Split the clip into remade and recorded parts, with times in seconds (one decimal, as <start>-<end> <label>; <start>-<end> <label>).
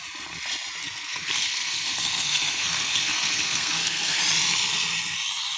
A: 0.0-0.8 recorded; 0.8-4.2 remade; 4.2-5.6 recorded